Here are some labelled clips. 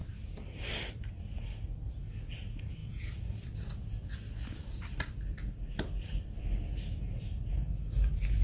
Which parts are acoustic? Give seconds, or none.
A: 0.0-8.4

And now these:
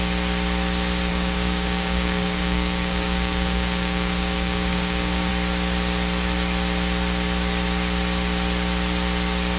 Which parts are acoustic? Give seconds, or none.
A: 0.0-1.1; 5.3-9.6

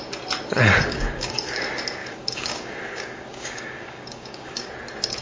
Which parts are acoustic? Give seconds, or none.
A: 0.0-0.8; 1.6-2.0; 4.7-5.2

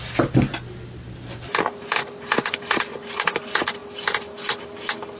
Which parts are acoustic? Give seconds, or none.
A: 0.0-5.2